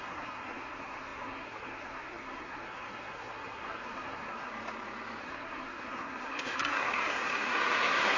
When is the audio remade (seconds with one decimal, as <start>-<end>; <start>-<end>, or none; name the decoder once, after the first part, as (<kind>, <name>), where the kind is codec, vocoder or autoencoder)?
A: 0.0-4.5 (codec, SNAC); 5.2-8.2